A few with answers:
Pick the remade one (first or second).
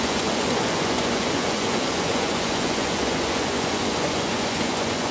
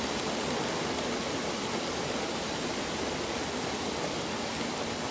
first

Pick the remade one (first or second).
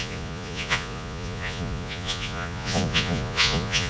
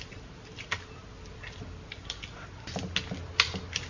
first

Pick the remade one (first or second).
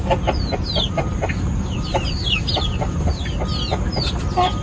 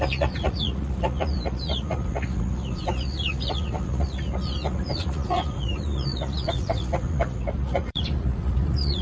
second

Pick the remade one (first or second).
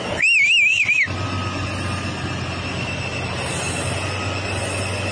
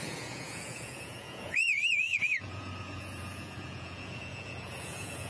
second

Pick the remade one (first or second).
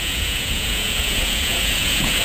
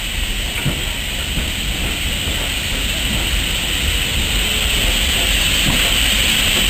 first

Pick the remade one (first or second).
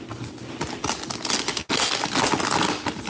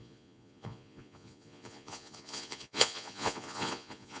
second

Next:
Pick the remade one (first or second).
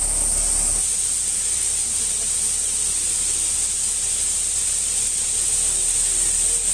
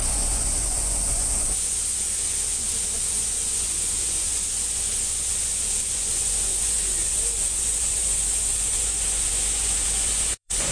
second